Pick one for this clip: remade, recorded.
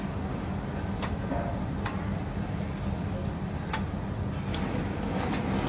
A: recorded